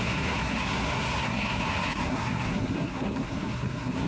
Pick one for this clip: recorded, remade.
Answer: remade